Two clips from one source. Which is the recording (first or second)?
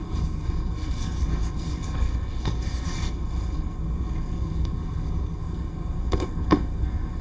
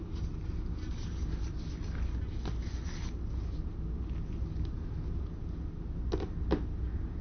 second